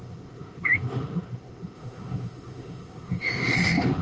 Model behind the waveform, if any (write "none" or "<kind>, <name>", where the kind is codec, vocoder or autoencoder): autoencoder, DAC-VAE